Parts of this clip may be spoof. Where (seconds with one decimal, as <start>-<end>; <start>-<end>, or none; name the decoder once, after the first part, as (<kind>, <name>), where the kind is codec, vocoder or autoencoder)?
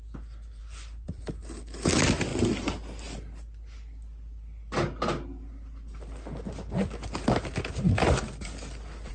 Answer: 0.6-1.3 (vocoder, BigVGAN v2)